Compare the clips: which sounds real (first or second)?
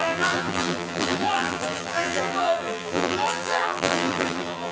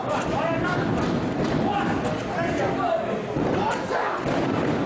second